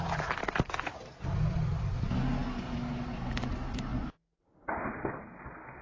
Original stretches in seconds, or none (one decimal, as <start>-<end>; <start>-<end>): 0.0-5.8